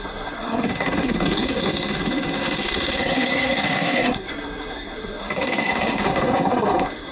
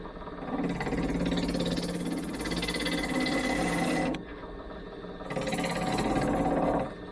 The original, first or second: second